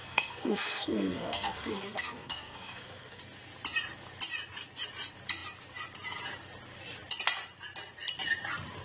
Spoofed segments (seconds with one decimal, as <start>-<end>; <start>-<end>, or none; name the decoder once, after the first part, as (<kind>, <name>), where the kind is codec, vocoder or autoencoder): 0.0-3.2 (codec, SNAC)